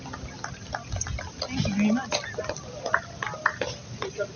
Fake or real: real